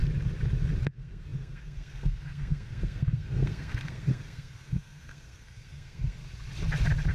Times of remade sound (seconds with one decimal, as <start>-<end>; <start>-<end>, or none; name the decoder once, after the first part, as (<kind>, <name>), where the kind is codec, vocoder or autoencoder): 0.8-6.2 (codec, SNAC)